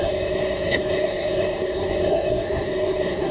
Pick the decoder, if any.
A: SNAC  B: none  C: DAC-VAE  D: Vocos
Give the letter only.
A